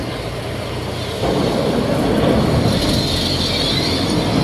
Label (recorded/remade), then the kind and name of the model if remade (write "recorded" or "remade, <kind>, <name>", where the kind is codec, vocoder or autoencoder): recorded